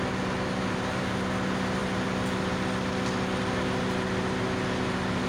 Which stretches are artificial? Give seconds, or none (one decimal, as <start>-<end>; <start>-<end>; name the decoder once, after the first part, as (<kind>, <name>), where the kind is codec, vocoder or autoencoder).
none